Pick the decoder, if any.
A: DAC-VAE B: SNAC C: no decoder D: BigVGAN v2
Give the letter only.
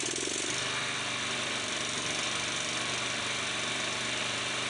D